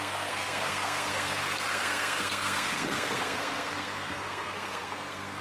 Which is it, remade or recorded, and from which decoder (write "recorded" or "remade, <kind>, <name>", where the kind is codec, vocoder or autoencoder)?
remade, codec, SNAC